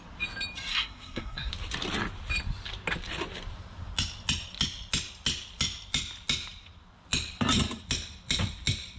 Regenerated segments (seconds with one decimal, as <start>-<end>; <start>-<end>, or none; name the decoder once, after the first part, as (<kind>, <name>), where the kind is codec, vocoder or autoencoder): 0.7-1.5 (codec, SNAC)